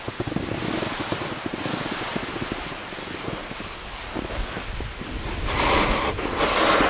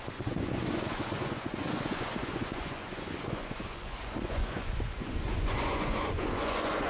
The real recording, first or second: first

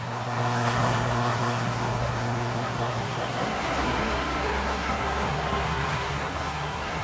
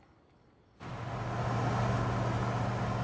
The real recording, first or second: second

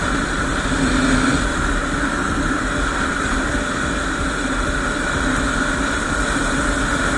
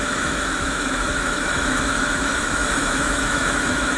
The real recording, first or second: first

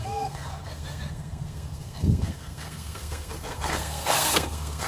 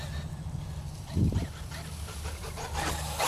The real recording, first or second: second